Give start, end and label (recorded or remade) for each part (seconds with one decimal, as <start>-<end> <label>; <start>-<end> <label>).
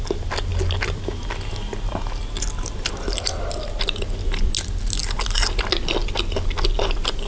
0.0-7.3 recorded